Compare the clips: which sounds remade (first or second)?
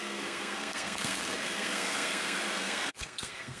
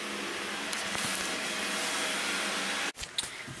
first